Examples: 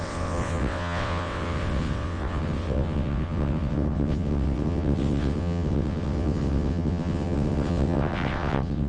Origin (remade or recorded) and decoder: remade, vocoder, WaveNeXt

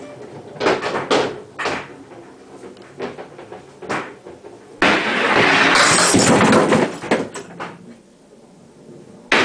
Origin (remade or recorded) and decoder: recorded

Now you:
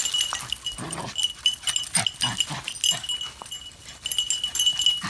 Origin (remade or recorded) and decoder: recorded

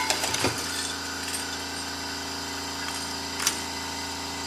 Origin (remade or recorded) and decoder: recorded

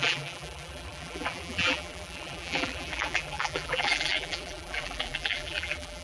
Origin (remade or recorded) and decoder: remade, vocoder, BigVGAN v2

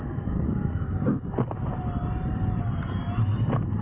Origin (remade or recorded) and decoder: recorded